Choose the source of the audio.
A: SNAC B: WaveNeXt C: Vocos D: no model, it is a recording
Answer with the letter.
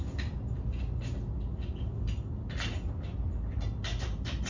D